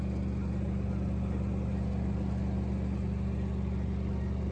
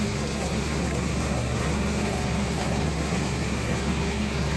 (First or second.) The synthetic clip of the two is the second